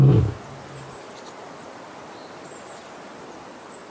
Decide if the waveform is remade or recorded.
recorded